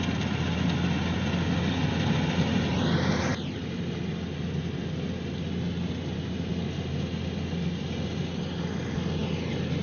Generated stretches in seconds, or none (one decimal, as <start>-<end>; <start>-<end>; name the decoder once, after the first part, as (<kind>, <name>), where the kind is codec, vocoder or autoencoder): none